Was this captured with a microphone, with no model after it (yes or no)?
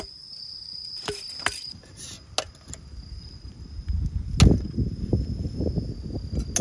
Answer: yes